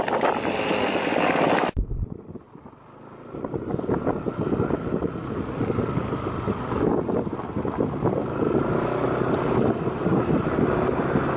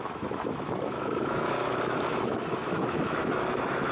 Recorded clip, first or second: first